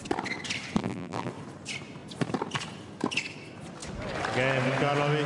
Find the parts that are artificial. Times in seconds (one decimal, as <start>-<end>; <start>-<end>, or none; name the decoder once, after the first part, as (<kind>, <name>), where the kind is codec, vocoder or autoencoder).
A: 0.8-1.3 (vocoder, BigVGAN v2)